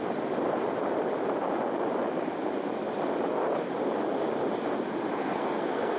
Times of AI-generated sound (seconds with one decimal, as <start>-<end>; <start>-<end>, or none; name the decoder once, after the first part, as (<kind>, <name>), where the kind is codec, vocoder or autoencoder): 5.2-6.0 (codec, SNAC)